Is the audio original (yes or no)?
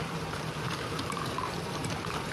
no